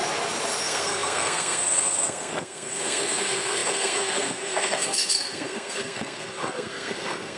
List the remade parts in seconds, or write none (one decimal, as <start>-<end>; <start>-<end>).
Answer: 0.6-7.4